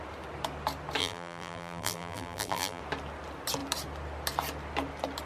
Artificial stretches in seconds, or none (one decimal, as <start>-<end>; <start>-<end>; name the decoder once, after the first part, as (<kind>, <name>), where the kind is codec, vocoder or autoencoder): 1.0-2.8 (vocoder, BigVGAN v2)